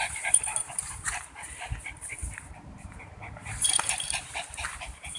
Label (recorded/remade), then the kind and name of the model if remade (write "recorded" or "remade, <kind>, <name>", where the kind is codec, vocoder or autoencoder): remade, vocoder, BigVGAN v2